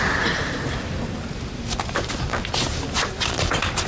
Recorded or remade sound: recorded